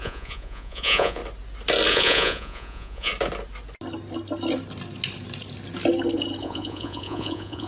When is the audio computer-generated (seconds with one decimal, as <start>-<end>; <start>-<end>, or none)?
0.0-1.2; 1.9-3.1; 6.4-7.7

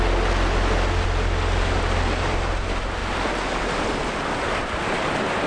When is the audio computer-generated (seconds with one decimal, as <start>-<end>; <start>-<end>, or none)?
none

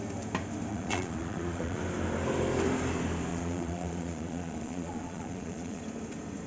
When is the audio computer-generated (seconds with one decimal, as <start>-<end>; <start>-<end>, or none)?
0.7-1.8; 3.3-5.8

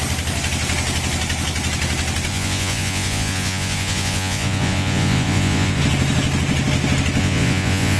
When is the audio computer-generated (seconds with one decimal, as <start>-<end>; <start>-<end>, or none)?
2.3-5.8; 7.2-8.0

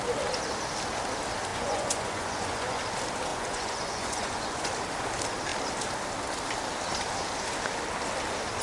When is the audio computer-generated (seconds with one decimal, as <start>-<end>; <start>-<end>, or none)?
1.5-2.8; 3.3-4.7

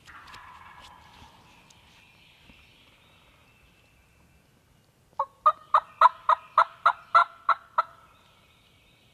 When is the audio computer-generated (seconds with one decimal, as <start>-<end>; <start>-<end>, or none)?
none

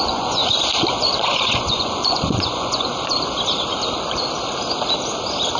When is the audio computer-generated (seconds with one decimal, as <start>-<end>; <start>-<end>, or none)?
0.0-0.4; 0.9-2.9

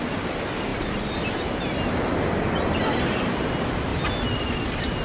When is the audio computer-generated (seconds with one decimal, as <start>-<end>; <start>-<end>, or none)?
none